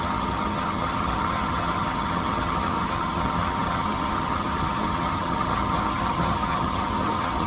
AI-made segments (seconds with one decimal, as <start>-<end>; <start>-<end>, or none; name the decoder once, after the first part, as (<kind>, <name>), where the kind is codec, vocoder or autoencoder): 0.0-7.5 (vocoder, HiFi-GAN)